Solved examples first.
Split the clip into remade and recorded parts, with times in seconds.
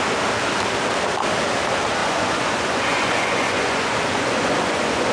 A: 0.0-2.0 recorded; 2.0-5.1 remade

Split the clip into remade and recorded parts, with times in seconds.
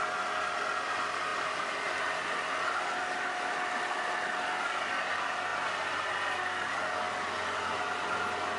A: 0.0-8.6 recorded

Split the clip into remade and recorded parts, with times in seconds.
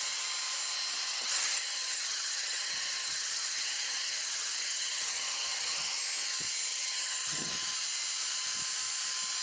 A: 0.0-1.1 recorded; 1.1-6.0 remade; 6.0-6.7 recorded; 6.7-7.5 remade; 7.5-9.4 recorded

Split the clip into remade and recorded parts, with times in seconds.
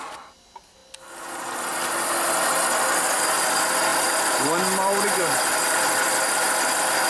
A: 0.0-3.9 recorded; 3.9-5.2 remade; 5.2-7.1 recorded